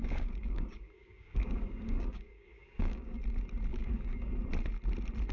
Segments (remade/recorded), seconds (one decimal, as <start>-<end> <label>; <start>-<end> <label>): 0.0-3.2 remade; 3.2-3.7 recorded; 3.7-4.3 remade; 4.3-5.3 recorded